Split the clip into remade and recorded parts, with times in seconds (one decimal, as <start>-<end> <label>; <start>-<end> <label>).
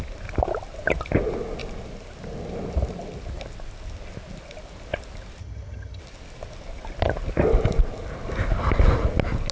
0.0-5.4 recorded; 5.4-6.0 remade; 6.0-9.5 recorded